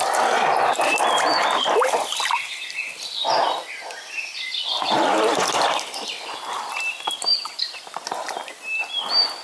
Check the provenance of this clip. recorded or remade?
recorded